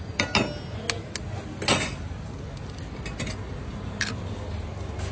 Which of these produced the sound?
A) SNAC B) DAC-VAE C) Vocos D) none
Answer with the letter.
D